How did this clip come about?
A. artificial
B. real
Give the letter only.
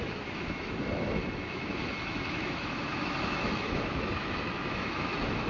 A